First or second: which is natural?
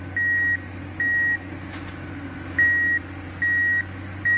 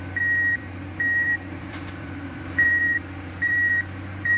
first